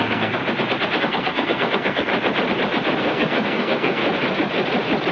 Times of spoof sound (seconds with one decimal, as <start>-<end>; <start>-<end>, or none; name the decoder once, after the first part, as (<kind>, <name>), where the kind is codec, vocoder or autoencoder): 0.0-0.4 (codec, SNAC); 1.0-2.1; 3.0-4.0